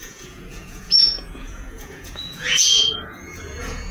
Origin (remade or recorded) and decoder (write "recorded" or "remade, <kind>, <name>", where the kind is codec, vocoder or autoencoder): remade, vocoder, Vocos